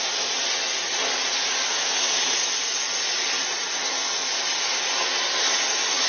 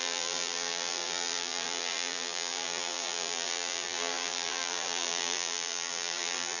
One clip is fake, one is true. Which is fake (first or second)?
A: second